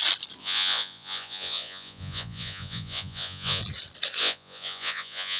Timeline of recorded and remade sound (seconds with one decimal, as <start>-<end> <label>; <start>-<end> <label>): 0.0-0.4 recorded; 0.4-3.6 remade; 3.6-4.2 recorded; 4.2-5.4 remade